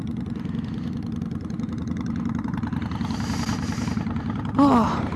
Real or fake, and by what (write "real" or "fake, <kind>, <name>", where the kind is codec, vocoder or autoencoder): real